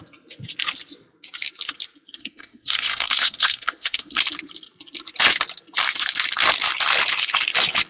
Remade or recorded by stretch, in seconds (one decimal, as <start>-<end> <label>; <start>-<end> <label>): 0.0-2.2 recorded; 2.2-4.2 remade; 4.2-7.9 recorded